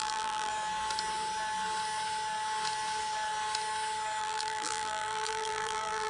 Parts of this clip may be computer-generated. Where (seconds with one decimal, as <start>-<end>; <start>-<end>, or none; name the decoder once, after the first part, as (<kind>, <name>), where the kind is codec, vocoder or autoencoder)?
0.0-0.5 (vocoder, BigVGAN v2); 4.2-6.1